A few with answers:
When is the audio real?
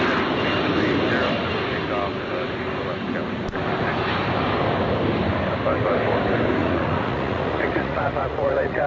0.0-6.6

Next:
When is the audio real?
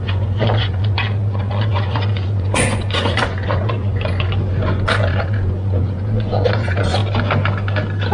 7.0-8.1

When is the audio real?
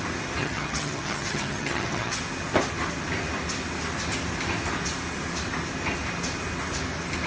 0.0-0.4; 2.2-7.3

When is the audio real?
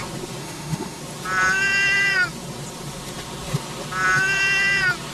0.0-0.4; 1.0-5.1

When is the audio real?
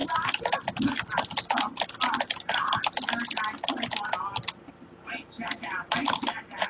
0.0-6.7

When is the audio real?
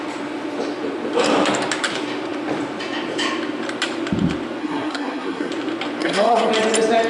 0.0-4.6; 5.5-6.0; 6.5-7.1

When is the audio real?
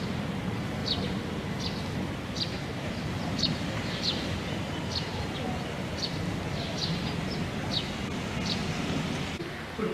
0.0-0.8; 4.5-9.9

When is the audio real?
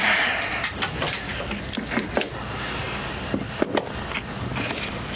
0.0-5.2